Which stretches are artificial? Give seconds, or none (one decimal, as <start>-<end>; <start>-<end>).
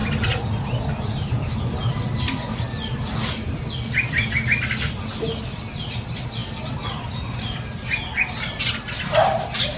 none